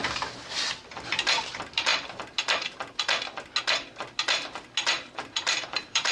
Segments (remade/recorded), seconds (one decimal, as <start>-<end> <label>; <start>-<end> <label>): 0.0-0.9 recorded; 0.9-1.9 remade; 1.9-5.6 recorded; 5.6-6.1 remade

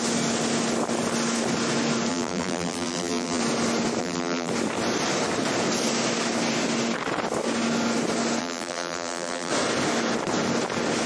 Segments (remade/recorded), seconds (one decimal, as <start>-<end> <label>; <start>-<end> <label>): 0.0-2.1 recorded; 2.1-3.4 remade; 3.4-4.0 recorded; 4.0-4.5 remade; 4.5-8.4 recorded; 8.4-9.5 remade; 9.5-11.1 recorded

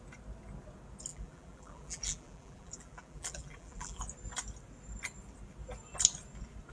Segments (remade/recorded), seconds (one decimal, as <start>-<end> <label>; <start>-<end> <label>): 0.0-1.1 recorded; 1.1-4.0 remade; 4.0-6.7 recorded

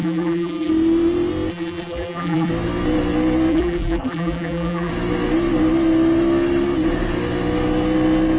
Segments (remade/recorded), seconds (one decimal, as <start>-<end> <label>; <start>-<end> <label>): 0.0-0.7 remade; 0.7-1.5 recorded; 1.5-2.5 remade; 2.5-3.5 recorded; 3.5-4.9 remade; 4.9-8.4 recorded

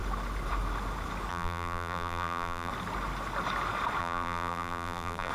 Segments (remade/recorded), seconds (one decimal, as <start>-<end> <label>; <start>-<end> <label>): 0.0-1.3 recorded; 1.3-2.7 remade; 2.7-4.0 recorded; 4.0-5.3 remade

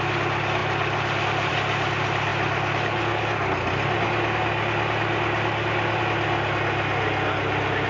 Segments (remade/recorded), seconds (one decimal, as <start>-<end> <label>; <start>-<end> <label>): 0.0-7.9 recorded

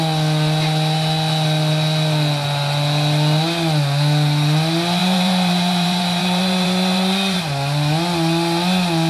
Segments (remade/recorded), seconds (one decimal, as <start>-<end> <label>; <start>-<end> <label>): 0.0-5.0 recorded; 5.0-7.4 remade; 7.4-9.1 recorded